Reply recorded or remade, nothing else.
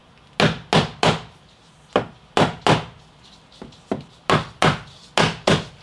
recorded